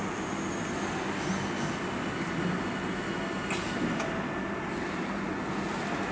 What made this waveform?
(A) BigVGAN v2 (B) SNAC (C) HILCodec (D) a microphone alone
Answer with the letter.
D